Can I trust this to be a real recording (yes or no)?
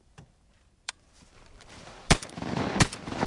no